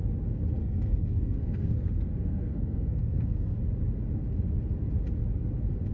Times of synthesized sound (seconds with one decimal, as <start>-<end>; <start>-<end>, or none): 0.6-3.6